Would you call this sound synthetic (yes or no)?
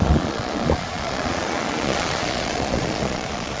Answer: yes